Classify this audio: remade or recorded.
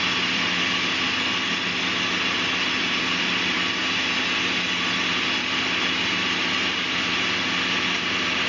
recorded